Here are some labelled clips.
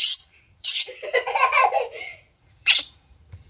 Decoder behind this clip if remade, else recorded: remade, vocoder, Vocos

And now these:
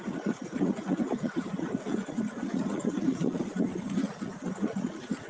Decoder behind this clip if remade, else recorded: remade, vocoder, Vocos